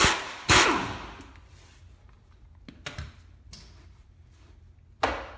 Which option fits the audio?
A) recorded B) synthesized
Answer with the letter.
A